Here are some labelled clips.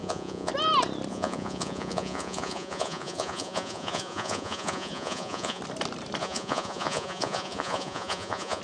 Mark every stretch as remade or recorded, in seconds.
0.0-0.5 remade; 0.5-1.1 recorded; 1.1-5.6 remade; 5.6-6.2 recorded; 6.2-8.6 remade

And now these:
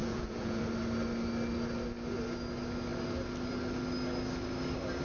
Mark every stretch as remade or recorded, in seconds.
0.0-0.6 remade; 0.6-5.0 recorded

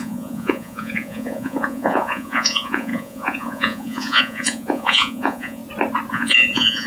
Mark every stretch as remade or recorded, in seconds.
0.0-5.6 remade; 5.6-6.1 recorded; 6.1-6.9 remade

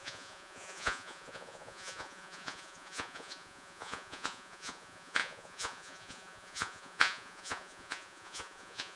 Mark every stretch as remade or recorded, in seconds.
0.0-9.0 remade

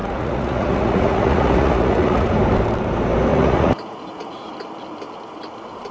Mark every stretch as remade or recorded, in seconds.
0.0-2.4 remade; 2.4-3.3 recorded; 3.3-4.5 remade; 4.5-5.9 recorded

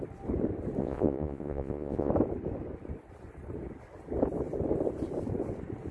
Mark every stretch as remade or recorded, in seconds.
0.0-0.8 recorded; 0.8-2.1 remade; 2.1-5.9 recorded

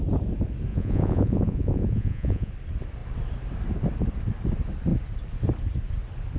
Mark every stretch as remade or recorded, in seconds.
0.0-0.7 recorded; 0.7-2.5 remade; 2.5-6.4 recorded